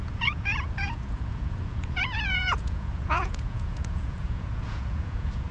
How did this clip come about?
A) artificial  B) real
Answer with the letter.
A